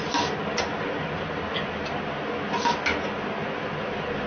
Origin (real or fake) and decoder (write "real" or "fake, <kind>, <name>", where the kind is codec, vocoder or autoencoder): real